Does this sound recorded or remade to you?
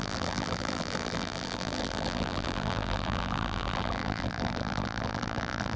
remade